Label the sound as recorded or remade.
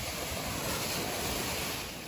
remade